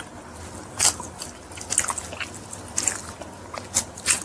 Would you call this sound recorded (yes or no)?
yes